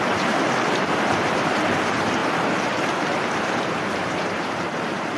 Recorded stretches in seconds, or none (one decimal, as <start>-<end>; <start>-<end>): 2.2-3.4